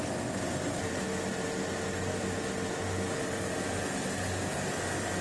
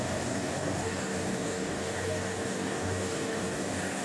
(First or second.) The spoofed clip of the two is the second